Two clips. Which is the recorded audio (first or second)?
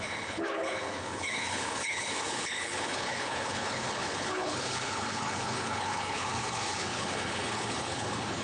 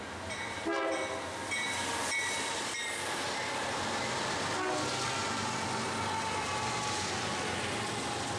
second